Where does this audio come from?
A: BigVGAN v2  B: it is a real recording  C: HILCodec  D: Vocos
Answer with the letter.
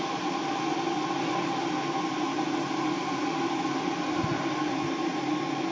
B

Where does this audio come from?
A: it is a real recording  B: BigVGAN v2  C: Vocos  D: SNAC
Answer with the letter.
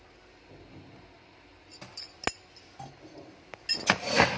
A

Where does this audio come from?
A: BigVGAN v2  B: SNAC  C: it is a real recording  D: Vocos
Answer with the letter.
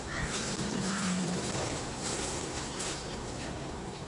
B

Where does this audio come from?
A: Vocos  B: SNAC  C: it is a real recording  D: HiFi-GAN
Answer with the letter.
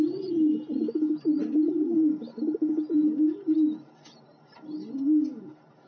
C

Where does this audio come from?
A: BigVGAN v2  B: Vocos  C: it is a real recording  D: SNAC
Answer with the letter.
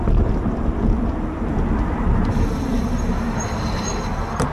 C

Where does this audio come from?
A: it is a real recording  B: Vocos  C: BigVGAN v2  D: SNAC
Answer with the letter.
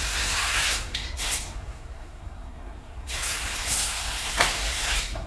D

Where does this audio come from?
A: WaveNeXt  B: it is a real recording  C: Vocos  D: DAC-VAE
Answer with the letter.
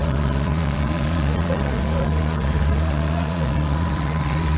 C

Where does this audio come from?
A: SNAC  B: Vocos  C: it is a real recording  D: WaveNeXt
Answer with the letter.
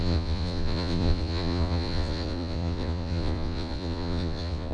B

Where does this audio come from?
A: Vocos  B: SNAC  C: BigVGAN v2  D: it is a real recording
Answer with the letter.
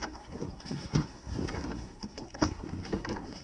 B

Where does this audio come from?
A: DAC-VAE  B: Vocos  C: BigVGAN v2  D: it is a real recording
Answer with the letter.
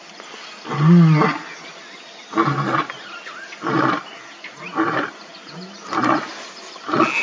D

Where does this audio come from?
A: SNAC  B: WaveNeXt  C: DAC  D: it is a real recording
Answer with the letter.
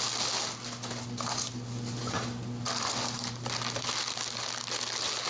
D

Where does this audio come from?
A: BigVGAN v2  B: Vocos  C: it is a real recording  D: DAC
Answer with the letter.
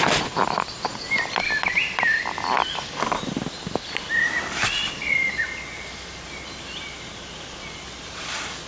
C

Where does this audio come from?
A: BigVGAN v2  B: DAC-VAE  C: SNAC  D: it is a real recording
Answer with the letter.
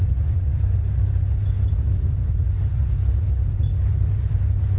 D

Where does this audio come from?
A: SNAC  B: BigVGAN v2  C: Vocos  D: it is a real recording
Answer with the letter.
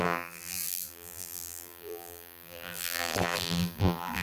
B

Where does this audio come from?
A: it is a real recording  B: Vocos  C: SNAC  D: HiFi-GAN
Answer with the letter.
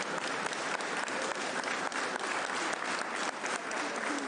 A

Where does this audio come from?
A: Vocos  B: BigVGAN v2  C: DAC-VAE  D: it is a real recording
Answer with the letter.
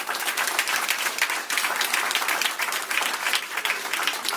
B